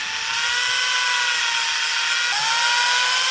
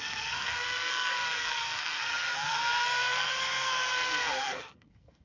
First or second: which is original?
first